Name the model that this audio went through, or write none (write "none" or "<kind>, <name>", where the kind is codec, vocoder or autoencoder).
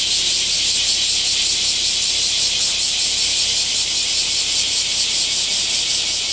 none